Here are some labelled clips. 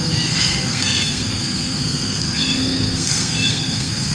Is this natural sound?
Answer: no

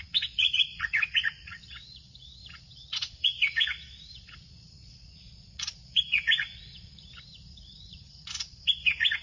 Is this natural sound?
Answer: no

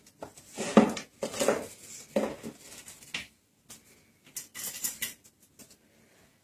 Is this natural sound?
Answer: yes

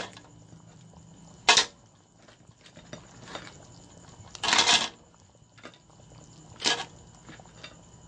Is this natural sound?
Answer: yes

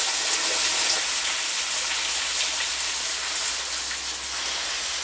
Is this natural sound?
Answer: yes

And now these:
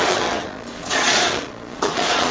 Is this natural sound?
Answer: no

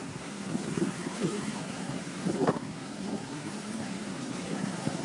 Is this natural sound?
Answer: no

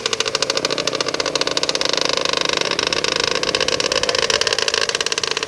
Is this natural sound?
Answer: yes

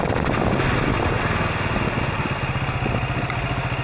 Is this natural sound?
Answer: yes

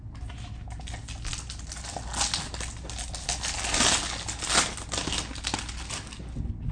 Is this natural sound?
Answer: yes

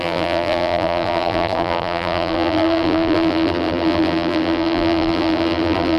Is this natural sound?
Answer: no